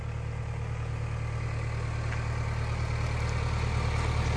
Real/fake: real